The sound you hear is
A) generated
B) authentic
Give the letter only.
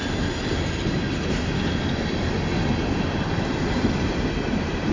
B